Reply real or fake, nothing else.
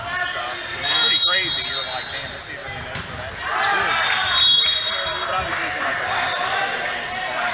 real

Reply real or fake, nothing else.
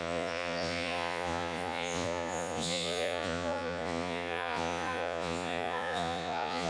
fake